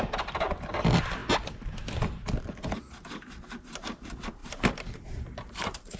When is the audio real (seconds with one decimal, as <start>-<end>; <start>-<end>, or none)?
0.0-4.4